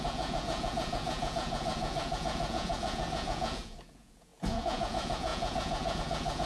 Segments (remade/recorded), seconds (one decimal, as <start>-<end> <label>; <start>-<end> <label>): 0.0-6.5 remade